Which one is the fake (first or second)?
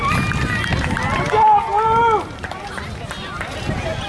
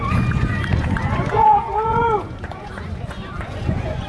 second